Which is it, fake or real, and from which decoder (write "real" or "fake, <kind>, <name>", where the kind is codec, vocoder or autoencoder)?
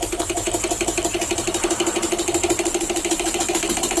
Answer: real